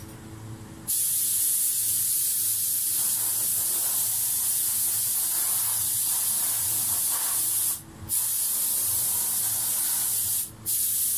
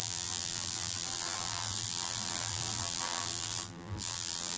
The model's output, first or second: second